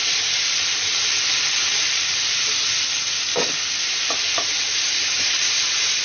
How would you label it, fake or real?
real